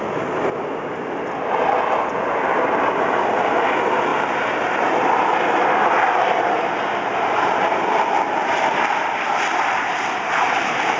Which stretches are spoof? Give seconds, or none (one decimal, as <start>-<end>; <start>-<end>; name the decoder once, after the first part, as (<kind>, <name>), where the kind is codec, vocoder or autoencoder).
none